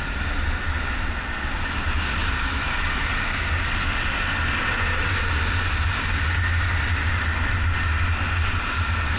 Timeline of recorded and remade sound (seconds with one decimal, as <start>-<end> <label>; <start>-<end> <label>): 0.0-2.2 recorded; 2.2-3.5 remade; 3.5-9.2 recorded